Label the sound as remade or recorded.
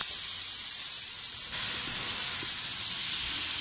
recorded